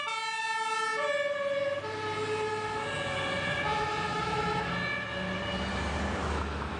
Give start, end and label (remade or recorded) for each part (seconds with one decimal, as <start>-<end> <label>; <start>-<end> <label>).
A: 0.0-4.1 recorded; 4.1-4.7 remade; 4.7-6.2 recorded; 6.2-6.8 remade